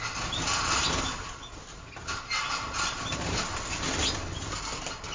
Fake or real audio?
real